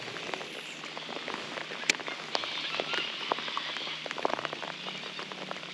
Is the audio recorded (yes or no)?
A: yes